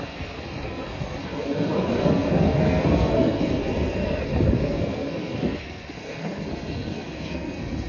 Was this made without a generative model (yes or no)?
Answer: no